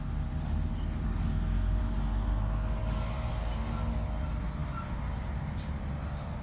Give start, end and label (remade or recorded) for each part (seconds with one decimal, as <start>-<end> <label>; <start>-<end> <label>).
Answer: 0.0-0.7 recorded; 0.7-1.8 remade; 1.8-2.8 recorded; 2.8-3.3 remade; 3.3-6.4 recorded